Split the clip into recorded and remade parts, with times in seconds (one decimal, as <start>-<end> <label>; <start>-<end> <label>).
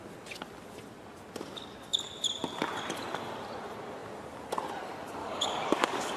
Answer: 0.0-5.2 recorded; 5.2-6.2 remade